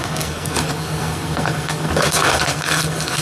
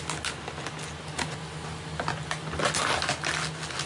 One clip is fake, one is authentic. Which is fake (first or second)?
first